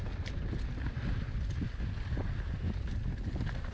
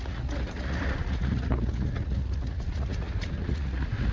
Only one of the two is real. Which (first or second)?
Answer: first